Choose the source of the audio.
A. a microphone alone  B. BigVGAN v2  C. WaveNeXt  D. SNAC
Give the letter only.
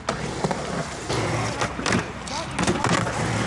A